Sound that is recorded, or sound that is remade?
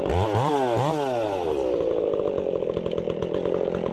recorded